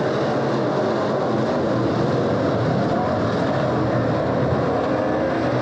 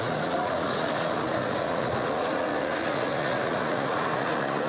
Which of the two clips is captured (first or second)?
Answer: first